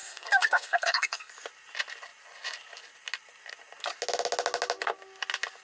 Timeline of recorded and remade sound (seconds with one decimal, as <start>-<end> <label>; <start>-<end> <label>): 0.0-1.3 remade; 1.3-5.6 recorded